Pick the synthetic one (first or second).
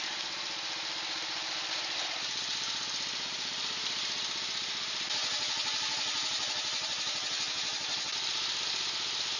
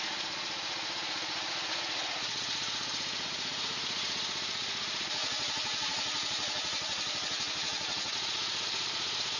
second